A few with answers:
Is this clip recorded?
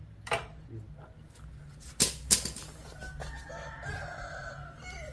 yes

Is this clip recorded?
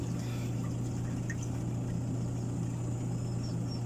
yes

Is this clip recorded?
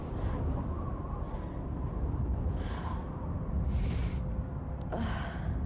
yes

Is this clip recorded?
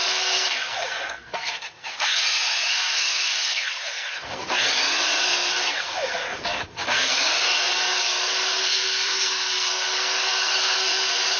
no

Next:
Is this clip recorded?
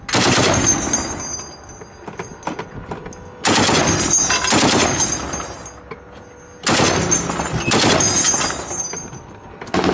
yes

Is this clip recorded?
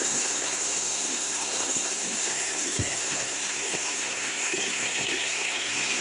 no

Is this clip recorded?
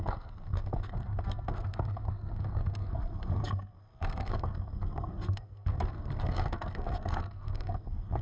no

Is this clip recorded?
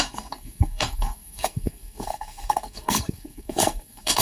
no